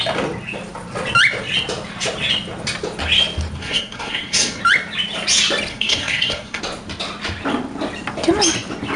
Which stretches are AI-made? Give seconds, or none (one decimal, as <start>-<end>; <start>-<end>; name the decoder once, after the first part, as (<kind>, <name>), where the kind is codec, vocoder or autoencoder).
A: 3.6-4.6 (codec, SNAC); 5.7-6.6